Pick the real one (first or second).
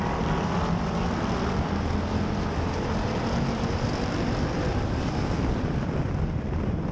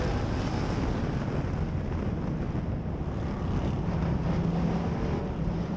second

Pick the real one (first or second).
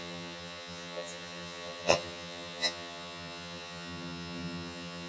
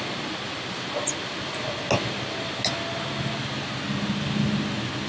second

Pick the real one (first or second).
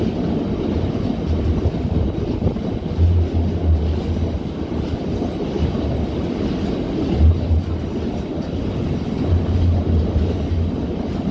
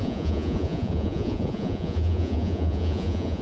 first